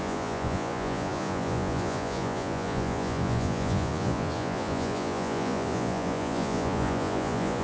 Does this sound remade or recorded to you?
remade